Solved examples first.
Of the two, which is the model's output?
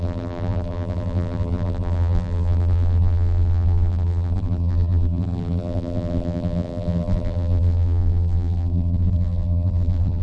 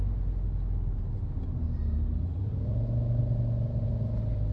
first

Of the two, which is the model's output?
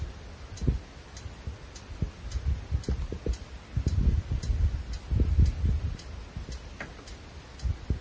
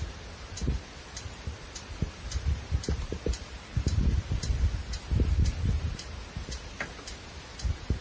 second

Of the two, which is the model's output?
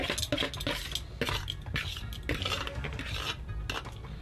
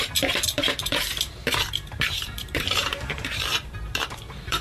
second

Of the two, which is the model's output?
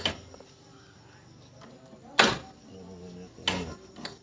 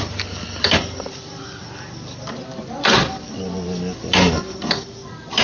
second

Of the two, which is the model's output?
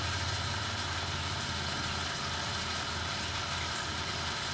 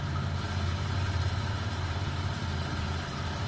second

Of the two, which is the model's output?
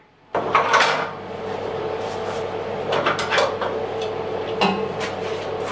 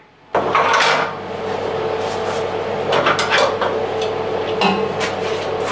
first